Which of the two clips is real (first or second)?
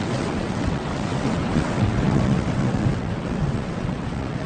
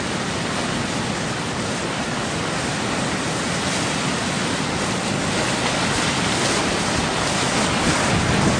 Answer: second